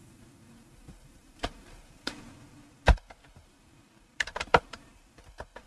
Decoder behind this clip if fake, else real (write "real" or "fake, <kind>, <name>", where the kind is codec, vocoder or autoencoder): fake, vocoder, BigVGAN v2